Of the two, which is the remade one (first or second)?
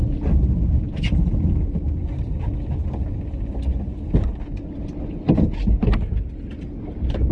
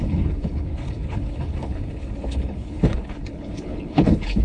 second